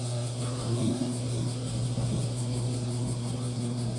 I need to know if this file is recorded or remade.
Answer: remade